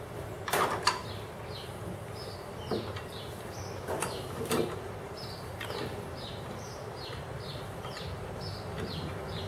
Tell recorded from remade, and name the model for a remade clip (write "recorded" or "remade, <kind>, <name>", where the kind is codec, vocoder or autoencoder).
recorded